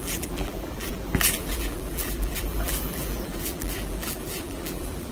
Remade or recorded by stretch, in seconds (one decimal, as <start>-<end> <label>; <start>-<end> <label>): 0.0-5.1 remade